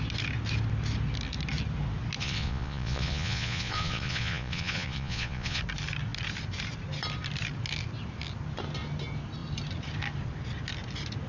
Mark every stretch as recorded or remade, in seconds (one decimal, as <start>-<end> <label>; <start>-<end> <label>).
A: 0.0-2.2 recorded; 2.2-5.6 remade; 5.6-11.3 recorded

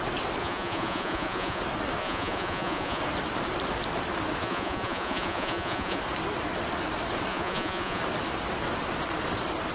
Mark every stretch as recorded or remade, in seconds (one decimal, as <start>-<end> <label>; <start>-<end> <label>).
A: 0.0-0.4 recorded; 0.4-1.6 remade; 1.6-2.0 recorded; 2.0-3.0 remade; 3.0-4.4 recorded; 4.4-6.0 remade; 6.0-7.3 recorded; 7.3-8.0 remade; 8.0-9.7 recorded

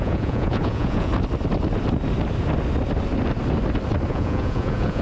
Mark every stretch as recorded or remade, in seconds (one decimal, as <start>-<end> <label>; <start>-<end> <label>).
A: 0.0-1.1 remade; 1.1-4.1 recorded; 4.1-5.0 remade

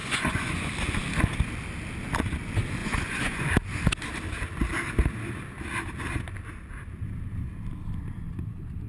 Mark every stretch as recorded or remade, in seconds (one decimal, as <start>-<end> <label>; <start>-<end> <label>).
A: 0.0-0.7 remade; 0.7-2.8 recorded; 2.8-3.5 remade; 3.5-8.9 recorded

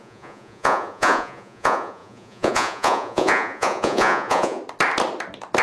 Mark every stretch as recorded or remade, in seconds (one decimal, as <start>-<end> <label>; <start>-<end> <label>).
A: 0.0-4.6 remade; 4.6-5.6 recorded

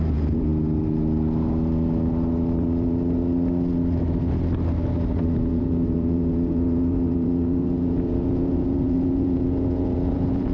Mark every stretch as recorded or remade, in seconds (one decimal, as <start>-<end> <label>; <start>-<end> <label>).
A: 0.0-0.5 remade; 0.5-5.2 recorded; 5.2-10.5 remade